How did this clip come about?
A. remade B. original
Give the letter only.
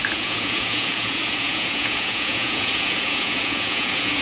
A